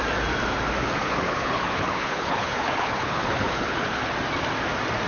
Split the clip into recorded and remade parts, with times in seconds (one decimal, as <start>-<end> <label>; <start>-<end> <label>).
0.0-1.0 recorded; 1.0-4.1 remade; 4.1-5.1 recorded